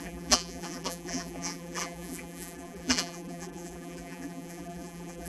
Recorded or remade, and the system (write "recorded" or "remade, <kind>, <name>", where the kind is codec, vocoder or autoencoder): remade, vocoder, BigVGAN v2